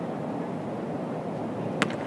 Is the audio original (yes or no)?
yes